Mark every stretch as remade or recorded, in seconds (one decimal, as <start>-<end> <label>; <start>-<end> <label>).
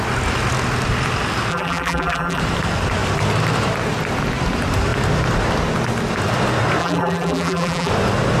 0.0-1.5 recorded; 1.5-2.4 remade; 2.4-6.8 recorded; 6.8-7.9 remade; 7.9-8.4 recorded